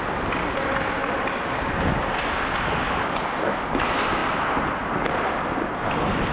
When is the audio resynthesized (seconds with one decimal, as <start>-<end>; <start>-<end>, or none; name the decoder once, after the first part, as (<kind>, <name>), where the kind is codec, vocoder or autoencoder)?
none

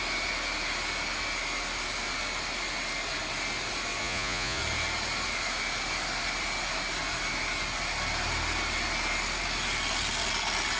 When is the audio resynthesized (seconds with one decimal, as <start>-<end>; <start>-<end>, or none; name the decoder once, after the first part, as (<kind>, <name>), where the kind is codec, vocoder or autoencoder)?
4.0-4.6 (vocoder, Vocos)

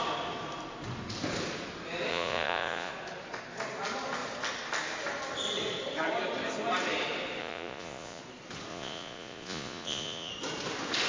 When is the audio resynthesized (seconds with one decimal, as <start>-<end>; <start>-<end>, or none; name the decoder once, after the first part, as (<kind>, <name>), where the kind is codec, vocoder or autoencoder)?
2.1-2.9 (vocoder, Vocos); 7.4-8.2; 8.7-10.3

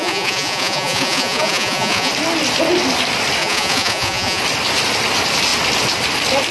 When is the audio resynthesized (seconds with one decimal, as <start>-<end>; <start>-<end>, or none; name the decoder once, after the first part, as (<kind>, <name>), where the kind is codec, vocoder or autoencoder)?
0.0-2.1 (vocoder, Vocos); 3.4-4.4

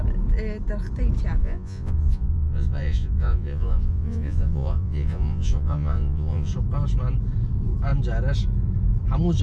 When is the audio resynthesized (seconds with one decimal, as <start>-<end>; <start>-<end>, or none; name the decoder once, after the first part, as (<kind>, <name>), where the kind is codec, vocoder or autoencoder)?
1.4-6.5 (vocoder, Vocos)

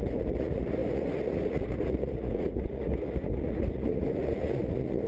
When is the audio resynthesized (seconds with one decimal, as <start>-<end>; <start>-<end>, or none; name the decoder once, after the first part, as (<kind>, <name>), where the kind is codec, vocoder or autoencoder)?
0.0-5.1 (vocoder, Vocos)